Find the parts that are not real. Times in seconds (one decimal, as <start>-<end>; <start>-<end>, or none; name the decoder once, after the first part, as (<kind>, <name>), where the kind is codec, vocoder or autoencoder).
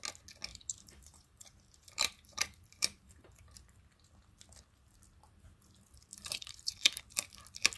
0.5-3.4 (vocoder, BigVGAN v2); 6.1-7.0